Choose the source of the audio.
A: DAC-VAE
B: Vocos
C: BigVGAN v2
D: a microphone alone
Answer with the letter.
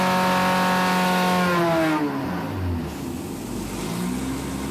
D